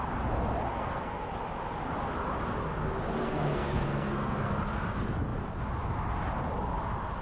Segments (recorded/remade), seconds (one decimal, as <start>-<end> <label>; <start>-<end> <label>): 0.0-0.7 recorded; 0.7-1.3 remade; 1.3-3.2 recorded; 3.2-4.5 remade; 4.5-7.2 recorded